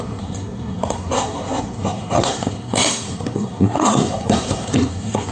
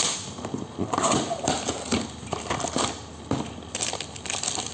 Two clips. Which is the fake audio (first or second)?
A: first